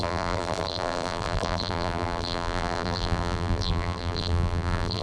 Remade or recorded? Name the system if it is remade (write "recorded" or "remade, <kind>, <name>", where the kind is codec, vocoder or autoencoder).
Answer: remade, vocoder, BigVGAN v2